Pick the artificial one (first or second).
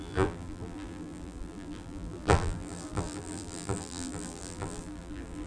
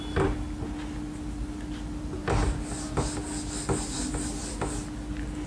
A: first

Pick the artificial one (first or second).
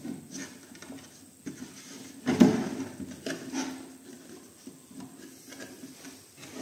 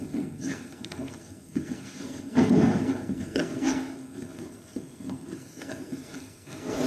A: second